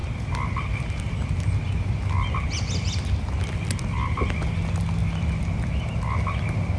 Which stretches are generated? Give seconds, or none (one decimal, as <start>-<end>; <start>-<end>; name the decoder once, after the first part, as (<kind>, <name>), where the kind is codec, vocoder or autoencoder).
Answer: none